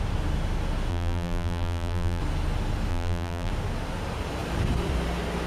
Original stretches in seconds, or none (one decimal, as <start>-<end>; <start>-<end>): 0.0-0.9; 2.2-2.9; 3.5-5.5